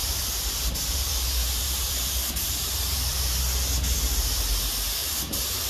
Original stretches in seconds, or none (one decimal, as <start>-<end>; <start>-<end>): 3.4-5.0